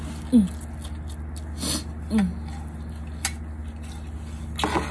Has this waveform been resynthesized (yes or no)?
no